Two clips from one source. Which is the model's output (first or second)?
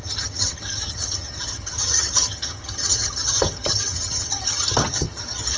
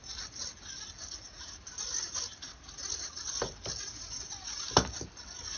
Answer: first